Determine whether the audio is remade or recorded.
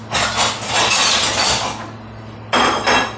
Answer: recorded